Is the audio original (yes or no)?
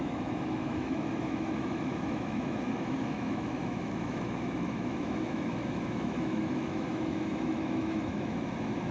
no